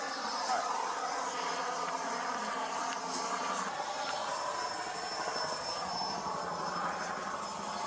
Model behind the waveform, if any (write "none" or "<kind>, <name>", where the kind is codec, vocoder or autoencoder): none